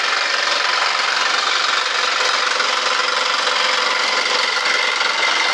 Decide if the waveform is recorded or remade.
recorded